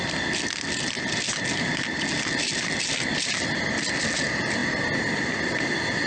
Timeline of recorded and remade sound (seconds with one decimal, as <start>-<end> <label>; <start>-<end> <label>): 0.0-6.1 recorded